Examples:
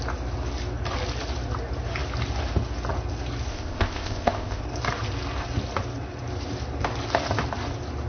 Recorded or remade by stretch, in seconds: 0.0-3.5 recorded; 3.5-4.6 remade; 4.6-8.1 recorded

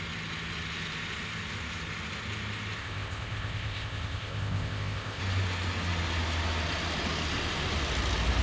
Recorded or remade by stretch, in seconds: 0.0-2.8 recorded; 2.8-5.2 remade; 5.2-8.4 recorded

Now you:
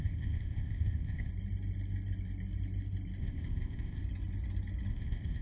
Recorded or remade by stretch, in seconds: 0.0-1.3 remade; 1.3-3.2 recorded; 3.2-4.0 remade; 4.0-4.9 recorded; 4.9-5.4 remade

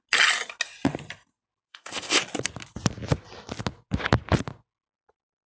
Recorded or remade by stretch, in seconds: 0.0-1.7 recorded; 1.7-2.2 remade; 2.2-5.5 recorded